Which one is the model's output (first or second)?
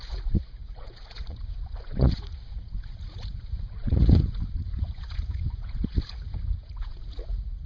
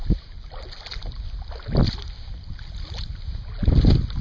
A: first